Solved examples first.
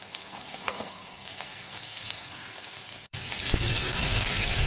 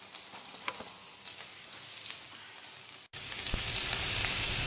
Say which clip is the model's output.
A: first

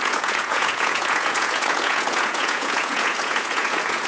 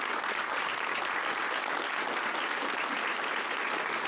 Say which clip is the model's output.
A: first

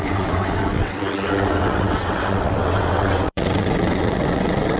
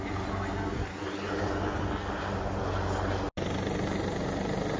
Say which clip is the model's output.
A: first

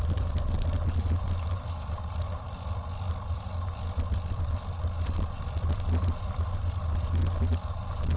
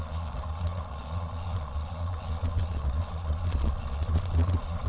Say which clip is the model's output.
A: second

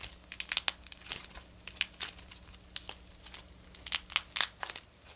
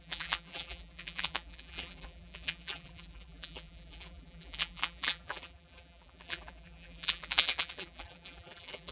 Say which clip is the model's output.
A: second